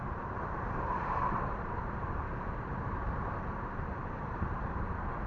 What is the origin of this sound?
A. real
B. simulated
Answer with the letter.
B